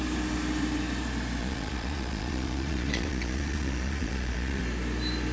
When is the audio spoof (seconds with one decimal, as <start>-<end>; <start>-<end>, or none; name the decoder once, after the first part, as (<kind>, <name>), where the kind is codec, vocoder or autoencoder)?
1.4-4.6 (vocoder, Vocos)